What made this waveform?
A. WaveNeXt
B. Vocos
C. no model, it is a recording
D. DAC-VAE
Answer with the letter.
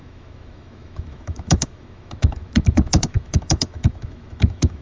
D